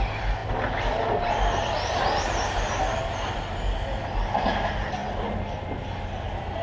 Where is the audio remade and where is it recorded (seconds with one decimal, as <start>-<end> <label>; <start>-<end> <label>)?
0.0-6.6 recorded